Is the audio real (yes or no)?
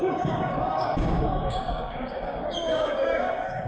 no